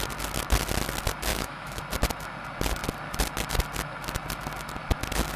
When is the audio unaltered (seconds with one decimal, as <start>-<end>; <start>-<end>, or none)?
0.0-1.3; 1.8-5.4